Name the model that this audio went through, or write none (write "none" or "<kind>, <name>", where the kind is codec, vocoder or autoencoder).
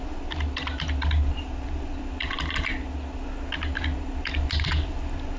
none